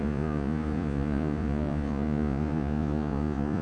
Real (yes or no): no